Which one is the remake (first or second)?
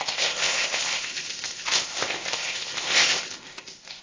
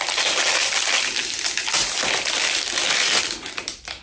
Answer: first